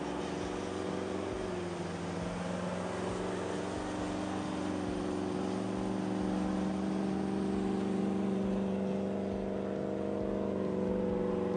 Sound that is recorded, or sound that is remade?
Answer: recorded